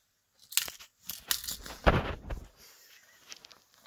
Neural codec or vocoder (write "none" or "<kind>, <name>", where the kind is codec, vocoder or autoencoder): none